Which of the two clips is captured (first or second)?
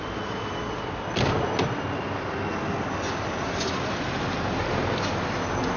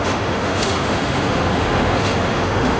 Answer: first